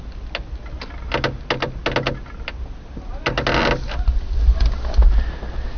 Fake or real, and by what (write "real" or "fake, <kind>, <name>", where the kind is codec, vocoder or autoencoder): real